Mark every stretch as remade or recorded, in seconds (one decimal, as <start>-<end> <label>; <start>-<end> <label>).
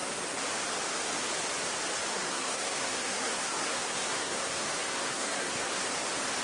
0.0-2.1 recorded; 2.1-5.9 remade; 5.9-6.4 recorded